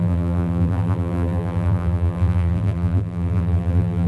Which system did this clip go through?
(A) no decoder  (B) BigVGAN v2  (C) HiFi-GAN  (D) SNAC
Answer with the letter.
B